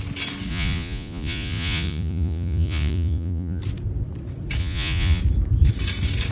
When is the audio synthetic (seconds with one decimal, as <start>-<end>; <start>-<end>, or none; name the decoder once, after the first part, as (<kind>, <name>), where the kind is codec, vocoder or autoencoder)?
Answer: 0.5-3.6 (vocoder, Vocos); 4.6-5.2